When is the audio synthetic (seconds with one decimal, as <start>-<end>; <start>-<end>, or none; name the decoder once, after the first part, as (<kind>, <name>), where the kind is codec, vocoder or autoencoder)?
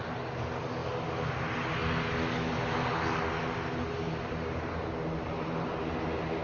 none